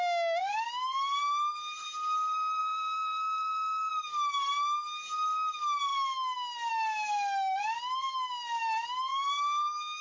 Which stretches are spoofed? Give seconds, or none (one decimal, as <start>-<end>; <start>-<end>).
2.6-3.9; 9.1-10.0